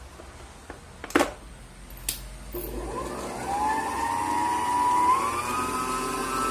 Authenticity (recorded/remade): recorded